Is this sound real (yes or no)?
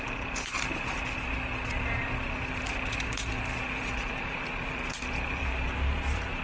no